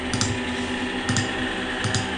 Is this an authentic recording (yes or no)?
yes